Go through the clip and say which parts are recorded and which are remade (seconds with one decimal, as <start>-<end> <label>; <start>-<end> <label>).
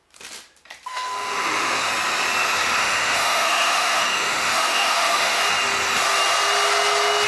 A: 0.0-0.9 recorded; 0.9-1.9 remade; 1.9-2.8 recorded; 2.8-5.4 remade; 5.4-7.3 recorded